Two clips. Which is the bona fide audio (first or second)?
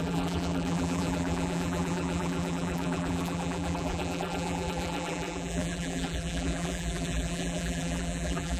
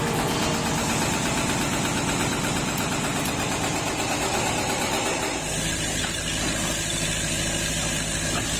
second